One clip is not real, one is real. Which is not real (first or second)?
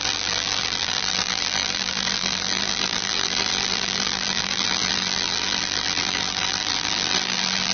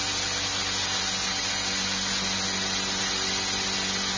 first